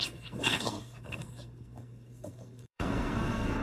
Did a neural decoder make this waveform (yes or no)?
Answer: yes